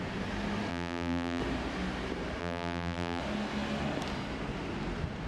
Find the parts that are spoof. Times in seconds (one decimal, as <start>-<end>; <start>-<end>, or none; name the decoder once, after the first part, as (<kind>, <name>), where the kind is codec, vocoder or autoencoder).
0.7-1.4 (vocoder, BigVGAN v2); 2.4-3.2